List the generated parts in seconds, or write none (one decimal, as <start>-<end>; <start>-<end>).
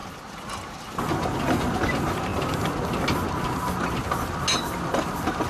0.0-1.9